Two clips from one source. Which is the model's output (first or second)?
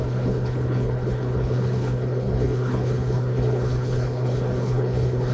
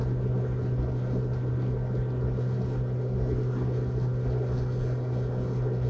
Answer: first